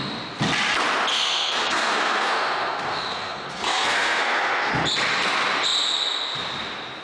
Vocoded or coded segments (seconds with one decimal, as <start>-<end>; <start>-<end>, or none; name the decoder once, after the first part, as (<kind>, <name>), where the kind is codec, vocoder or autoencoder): 1.1-4.7 (codec, SNAC)